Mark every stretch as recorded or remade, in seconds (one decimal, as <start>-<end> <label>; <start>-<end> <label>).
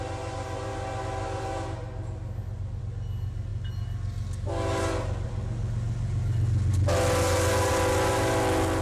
0.0-8.8 recorded